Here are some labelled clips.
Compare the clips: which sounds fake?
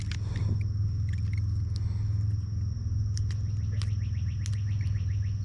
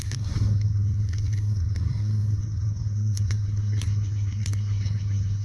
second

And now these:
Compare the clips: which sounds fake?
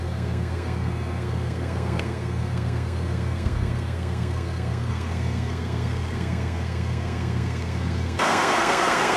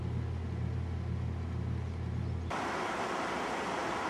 first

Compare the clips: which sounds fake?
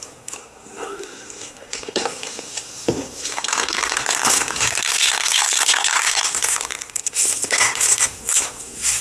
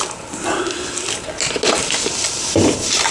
first